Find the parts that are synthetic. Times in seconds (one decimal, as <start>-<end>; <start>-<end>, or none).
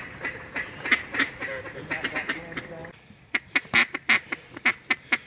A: none